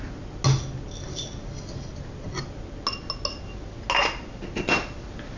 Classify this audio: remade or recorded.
recorded